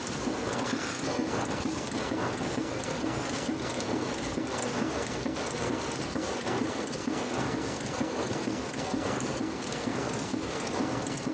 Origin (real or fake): fake